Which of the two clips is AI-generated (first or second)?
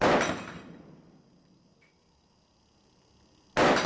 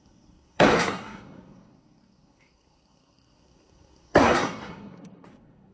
second